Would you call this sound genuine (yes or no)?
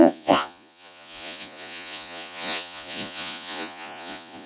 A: no